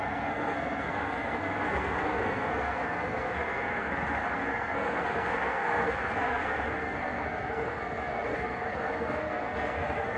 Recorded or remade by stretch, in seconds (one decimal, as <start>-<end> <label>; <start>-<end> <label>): 0.0-10.2 remade